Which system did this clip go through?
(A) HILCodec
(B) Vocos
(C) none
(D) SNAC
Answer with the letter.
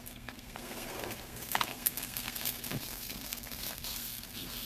D